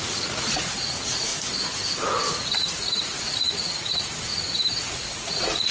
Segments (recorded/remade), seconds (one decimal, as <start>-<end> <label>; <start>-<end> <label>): 0.0-1.3 remade; 1.3-2.3 recorded; 2.3-4.3 remade; 4.3-4.9 recorded; 4.9-5.7 remade